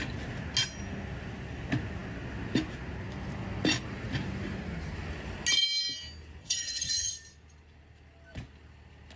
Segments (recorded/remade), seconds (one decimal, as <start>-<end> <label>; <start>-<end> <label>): 0.0-6.4 recorded; 6.4-7.1 remade; 7.1-9.2 recorded